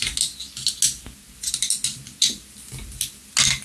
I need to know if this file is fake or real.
real